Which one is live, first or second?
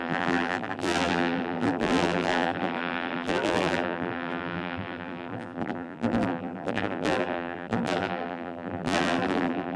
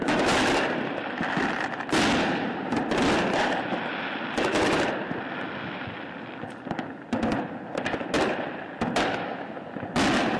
second